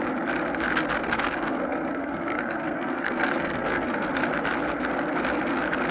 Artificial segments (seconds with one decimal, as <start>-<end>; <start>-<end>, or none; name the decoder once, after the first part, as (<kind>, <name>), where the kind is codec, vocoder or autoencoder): 1.0-4.1 (codec, SNAC)